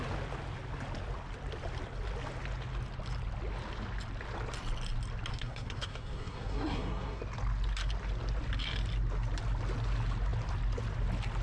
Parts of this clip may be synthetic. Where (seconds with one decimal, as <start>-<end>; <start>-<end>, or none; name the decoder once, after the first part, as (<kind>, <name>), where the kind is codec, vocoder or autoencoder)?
5.3-7.2 (codec, SNAC)